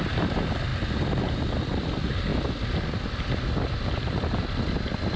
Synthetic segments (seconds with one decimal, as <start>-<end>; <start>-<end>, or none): none

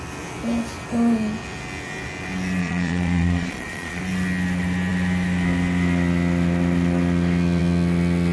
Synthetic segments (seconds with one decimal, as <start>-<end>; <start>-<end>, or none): 2.6-4.0

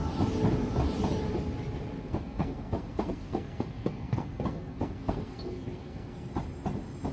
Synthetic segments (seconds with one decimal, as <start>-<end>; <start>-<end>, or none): 2.0-6.3